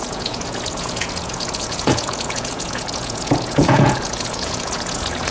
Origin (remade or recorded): remade